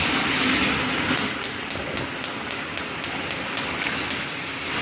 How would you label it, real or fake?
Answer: real